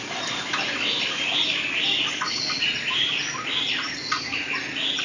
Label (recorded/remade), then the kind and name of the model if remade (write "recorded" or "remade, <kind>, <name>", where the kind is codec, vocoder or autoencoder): recorded